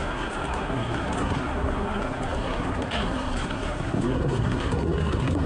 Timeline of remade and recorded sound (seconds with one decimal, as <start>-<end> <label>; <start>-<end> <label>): 0.0-5.5 remade